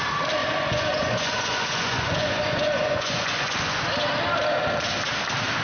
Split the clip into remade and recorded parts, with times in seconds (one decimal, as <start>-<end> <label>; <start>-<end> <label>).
0.0-0.4 recorded; 0.4-3.8 remade; 3.8-5.6 recorded